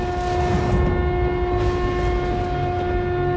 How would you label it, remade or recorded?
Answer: recorded